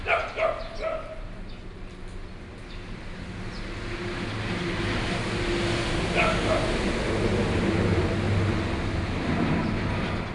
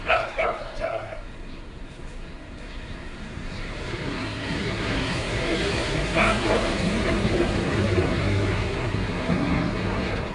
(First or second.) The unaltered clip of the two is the first